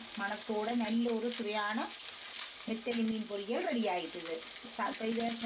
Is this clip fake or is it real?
real